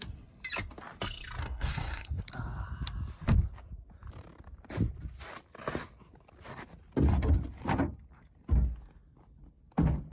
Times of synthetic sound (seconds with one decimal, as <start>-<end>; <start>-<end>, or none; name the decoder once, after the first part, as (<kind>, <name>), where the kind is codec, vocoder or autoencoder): 1.4-2.2 (codec, SNAC)